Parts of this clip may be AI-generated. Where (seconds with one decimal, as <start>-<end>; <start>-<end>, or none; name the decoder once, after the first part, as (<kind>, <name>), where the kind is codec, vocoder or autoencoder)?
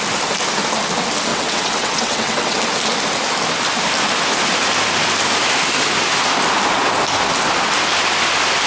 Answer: 1.3-2.6 (vocoder, WaveNeXt)